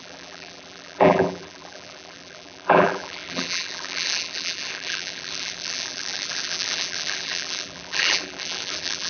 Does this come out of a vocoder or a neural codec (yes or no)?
yes